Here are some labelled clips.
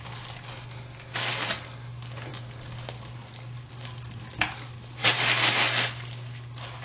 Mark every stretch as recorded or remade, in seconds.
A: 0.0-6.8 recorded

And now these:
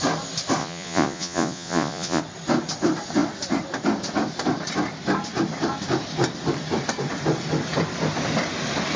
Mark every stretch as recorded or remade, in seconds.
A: 0.0-0.6 recorded; 0.6-2.2 remade; 2.2-9.0 recorded

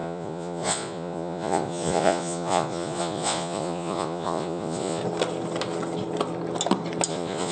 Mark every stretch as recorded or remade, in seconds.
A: 0.0-5.0 remade; 5.0-7.1 recorded; 7.1-7.5 remade

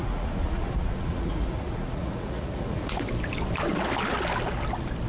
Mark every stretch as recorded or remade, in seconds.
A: 0.0-3.1 remade; 3.1-5.1 recorded

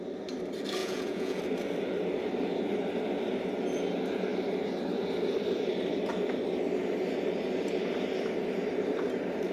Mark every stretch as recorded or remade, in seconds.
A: 0.0-0.8 recorded; 0.8-1.4 remade; 1.4-9.5 recorded

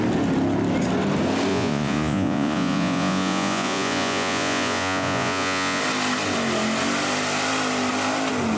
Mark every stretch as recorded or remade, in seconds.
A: 0.0-1.5 recorded; 1.5-5.8 remade; 5.8-8.6 recorded

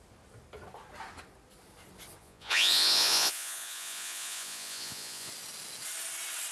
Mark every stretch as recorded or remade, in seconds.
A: 0.0-2.2 recorded; 2.2-5.3 remade; 5.3-6.5 recorded

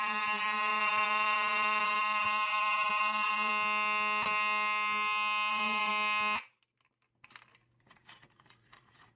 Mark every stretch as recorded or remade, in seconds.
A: 0.0-3.5 remade; 3.5-5.5 recorded; 5.5-5.9 remade; 5.9-7.8 recorded; 7.8-9.2 remade